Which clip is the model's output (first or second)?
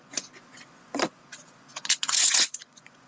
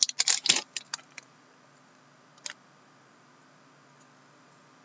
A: first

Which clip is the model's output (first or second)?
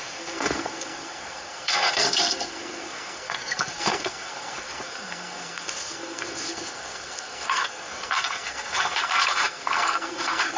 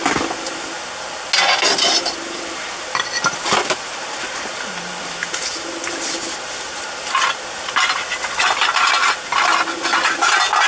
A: first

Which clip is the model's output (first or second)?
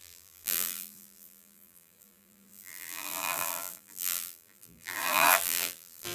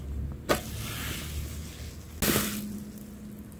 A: first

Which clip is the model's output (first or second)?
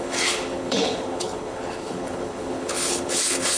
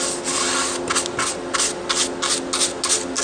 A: first